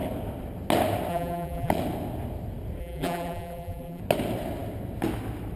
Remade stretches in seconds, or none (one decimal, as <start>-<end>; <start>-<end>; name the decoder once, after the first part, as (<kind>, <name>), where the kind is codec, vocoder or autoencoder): 1.1-1.7 (vocoder, BigVGAN v2); 2.8-4.0